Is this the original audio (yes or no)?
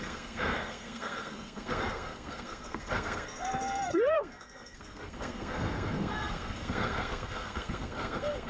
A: no